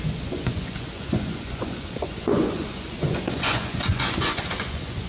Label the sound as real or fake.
fake